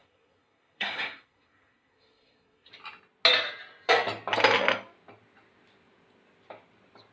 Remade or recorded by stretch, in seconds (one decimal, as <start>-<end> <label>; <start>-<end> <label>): 0.0-2.7 remade; 2.7-7.1 recorded